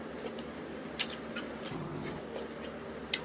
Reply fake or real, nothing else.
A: real